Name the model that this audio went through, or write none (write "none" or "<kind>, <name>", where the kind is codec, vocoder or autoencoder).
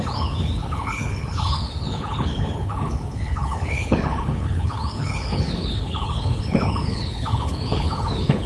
codec, HILCodec